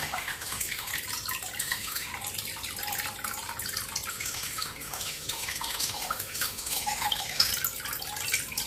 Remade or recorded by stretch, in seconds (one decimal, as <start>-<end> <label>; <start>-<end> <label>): 0.0-0.9 remade; 0.9-1.6 recorded; 1.6-2.1 remade; 2.1-4.1 recorded; 4.1-7.5 remade; 7.5-8.7 recorded